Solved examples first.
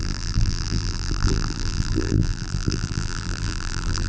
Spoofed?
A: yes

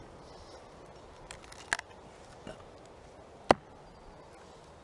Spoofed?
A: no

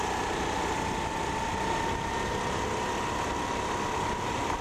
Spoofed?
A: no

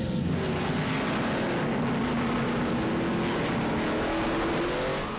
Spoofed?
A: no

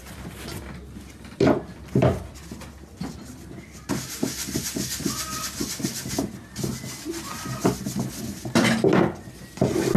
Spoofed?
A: no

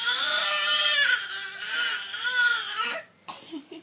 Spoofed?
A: yes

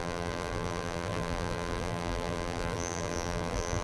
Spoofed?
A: yes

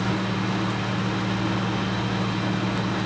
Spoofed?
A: no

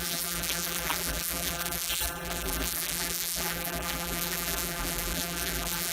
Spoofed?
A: yes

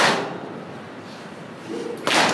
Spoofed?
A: yes